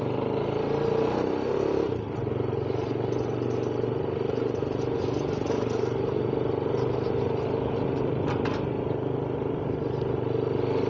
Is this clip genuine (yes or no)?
yes